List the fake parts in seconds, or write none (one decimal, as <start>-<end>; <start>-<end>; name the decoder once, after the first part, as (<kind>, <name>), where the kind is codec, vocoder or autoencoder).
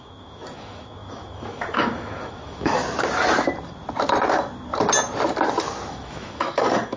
0.0-2.8 (autoencoder, DAC-VAE); 5.9-7.0